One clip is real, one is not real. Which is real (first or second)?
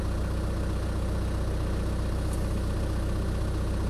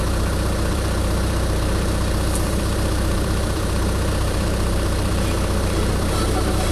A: first